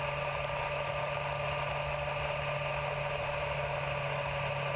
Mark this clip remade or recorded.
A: recorded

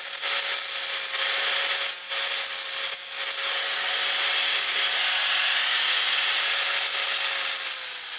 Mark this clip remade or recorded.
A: recorded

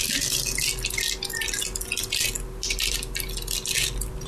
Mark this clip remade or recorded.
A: recorded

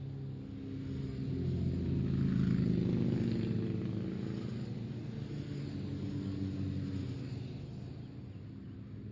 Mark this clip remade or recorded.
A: recorded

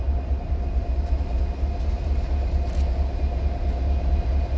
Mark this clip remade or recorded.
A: recorded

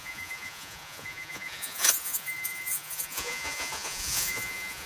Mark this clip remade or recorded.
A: remade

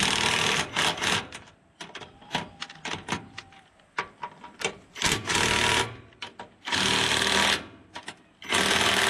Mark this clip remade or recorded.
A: recorded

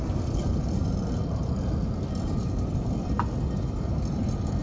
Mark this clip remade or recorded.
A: recorded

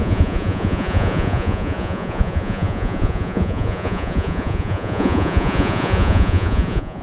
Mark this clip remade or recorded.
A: remade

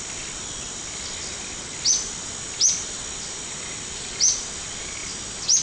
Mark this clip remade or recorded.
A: recorded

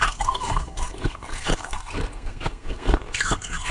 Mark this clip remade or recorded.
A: remade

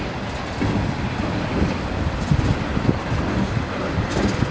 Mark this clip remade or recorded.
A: recorded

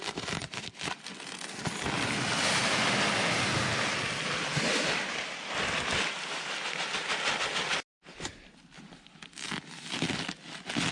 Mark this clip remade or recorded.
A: recorded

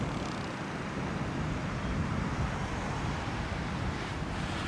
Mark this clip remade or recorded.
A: recorded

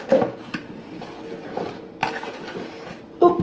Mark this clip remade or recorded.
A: recorded